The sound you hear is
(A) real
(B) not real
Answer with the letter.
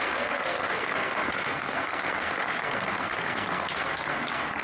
B